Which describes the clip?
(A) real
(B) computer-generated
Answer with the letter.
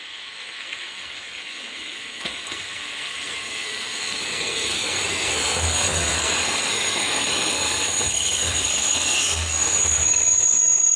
B